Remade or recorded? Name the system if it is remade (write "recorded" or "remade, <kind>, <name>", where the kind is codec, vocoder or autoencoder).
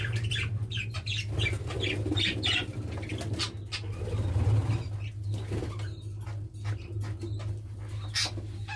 recorded